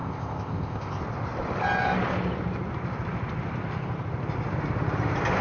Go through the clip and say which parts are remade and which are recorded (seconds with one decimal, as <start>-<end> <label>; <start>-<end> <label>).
0.0-1.0 remade; 1.0-5.4 recorded